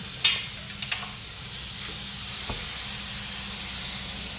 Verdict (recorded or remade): recorded